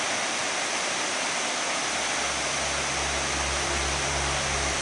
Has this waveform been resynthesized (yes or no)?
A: no